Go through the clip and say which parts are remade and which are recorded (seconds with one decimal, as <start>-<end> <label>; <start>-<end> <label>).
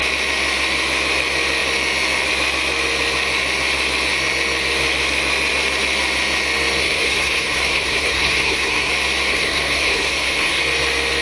0.0-6.8 recorded; 6.8-8.9 remade; 8.9-9.3 recorded; 9.3-10.6 remade; 10.6-11.2 recorded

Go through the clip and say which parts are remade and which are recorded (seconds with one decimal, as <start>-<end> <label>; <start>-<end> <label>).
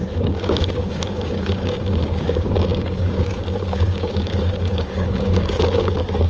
0.0-6.3 remade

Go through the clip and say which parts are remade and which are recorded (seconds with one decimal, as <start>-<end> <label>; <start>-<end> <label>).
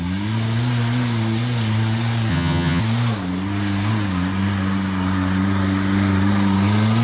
0.0-2.3 recorded; 2.3-2.8 remade; 2.8-7.0 recorded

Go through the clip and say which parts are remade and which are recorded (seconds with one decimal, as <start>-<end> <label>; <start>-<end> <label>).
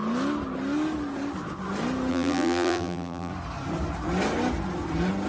0.0-2.1 recorded; 2.1-3.3 remade; 3.3-5.3 recorded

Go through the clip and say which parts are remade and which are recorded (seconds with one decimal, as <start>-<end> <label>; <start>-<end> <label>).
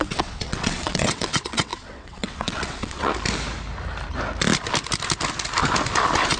0.0-3.1 remade; 3.1-6.4 recorded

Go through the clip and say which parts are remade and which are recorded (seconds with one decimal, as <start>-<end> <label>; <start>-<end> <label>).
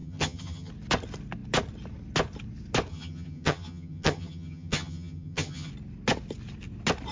0.0-0.7 remade; 0.7-2.9 recorded; 2.9-5.7 remade; 5.7-7.1 recorded